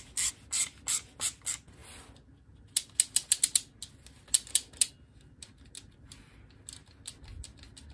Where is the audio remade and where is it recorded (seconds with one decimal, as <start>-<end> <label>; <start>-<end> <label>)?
0.0-7.9 recorded